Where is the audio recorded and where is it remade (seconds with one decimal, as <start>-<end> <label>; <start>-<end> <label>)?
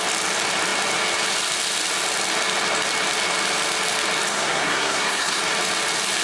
0.0-4.3 recorded; 4.3-5.4 remade; 5.4-6.2 recorded